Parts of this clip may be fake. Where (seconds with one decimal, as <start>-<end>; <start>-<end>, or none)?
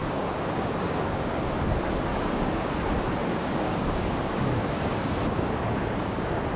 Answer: 0.0-1.5; 2.1-2.7; 3.4-6.6